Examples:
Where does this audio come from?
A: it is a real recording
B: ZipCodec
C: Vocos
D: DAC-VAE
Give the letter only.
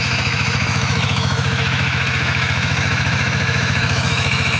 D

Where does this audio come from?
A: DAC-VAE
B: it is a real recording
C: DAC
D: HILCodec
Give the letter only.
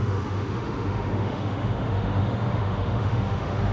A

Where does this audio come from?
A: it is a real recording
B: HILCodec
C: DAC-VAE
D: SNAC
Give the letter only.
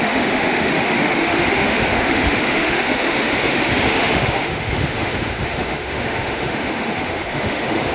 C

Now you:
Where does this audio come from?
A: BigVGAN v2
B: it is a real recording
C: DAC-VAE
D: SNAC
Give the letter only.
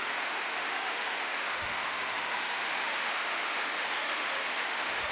C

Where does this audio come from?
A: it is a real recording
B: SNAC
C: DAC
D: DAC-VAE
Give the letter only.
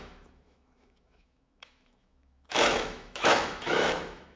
D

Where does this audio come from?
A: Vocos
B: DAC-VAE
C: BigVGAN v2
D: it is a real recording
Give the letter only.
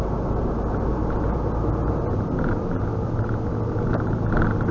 D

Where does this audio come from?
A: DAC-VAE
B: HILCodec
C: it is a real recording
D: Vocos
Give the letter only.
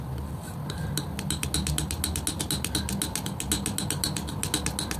C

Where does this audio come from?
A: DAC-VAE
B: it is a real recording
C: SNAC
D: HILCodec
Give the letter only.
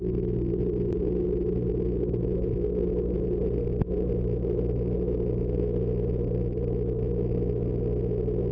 B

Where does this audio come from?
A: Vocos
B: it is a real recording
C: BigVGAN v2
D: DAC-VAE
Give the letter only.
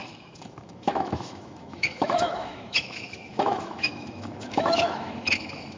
D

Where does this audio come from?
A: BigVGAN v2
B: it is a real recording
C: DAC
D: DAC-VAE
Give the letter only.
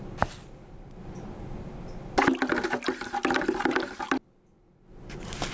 B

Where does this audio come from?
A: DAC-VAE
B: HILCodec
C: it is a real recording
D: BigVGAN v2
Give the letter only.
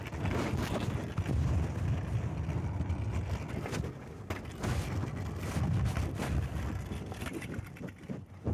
C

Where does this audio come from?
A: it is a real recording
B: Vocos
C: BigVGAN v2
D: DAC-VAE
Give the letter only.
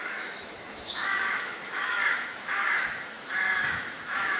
D